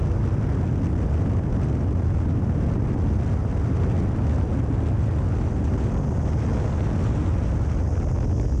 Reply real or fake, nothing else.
real